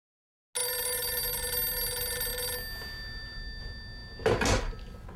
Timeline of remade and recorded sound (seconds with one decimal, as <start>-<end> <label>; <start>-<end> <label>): 0.0-5.2 recorded